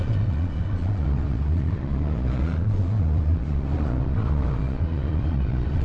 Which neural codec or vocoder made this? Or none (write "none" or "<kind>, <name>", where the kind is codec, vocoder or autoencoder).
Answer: vocoder, Vocos